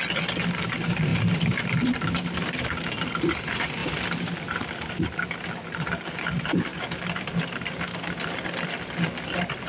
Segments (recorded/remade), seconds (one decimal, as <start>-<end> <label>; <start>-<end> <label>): 0.0-9.7 recorded